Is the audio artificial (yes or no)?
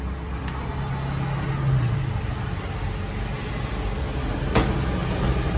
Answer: no